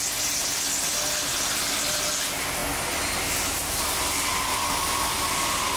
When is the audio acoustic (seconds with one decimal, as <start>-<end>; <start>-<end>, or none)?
0.0-0.9; 2.1-4.3; 5.1-5.8